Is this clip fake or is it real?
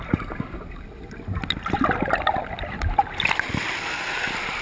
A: real